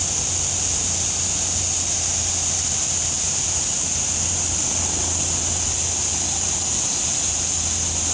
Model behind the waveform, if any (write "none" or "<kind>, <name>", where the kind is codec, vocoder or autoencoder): none